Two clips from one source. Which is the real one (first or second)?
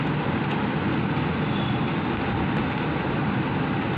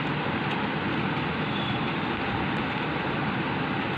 first